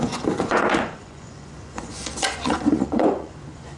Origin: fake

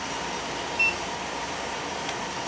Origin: real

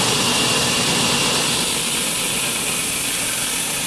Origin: real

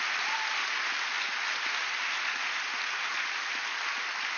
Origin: real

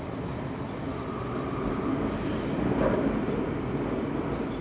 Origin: real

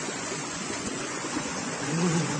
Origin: fake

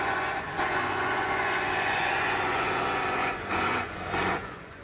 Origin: fake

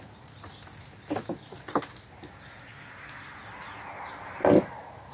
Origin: real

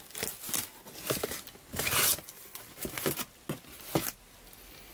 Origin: real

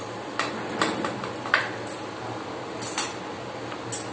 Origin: real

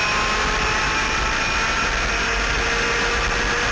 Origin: real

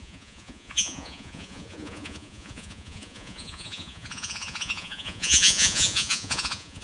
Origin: fake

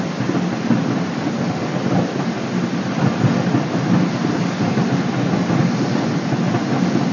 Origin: real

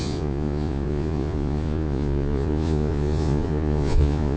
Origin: fake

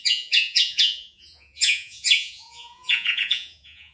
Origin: fake